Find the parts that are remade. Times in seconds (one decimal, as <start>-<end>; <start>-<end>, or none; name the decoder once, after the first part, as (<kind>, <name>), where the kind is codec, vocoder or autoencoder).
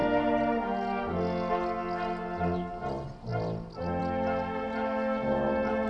none